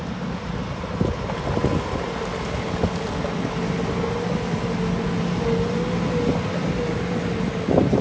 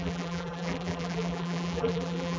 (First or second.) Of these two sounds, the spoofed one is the second